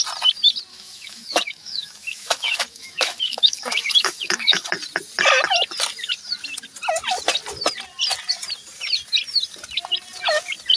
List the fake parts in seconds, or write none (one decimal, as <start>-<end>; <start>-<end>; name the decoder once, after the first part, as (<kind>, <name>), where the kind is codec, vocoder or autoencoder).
0.7-4.7 (autoencoder, DAC-VAE)